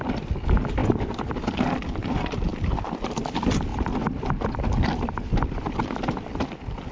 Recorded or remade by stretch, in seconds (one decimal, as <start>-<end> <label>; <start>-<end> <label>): 0.0-6.9 recorded